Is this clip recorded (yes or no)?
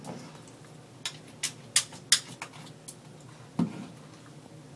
yes